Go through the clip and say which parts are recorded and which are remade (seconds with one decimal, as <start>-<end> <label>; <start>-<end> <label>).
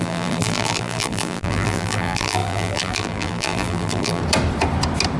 0.0-4.2 remade; 4.2-5.2 recorded